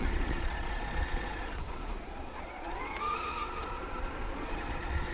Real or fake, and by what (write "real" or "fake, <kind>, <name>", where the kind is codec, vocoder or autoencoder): fake, vocoder, Vocos